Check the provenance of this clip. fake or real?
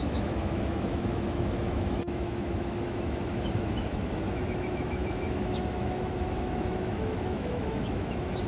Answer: fake